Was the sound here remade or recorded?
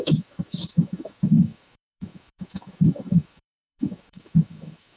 remade